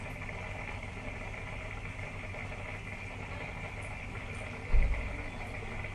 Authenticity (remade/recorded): recorded